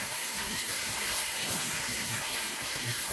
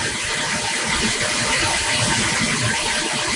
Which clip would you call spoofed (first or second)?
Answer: first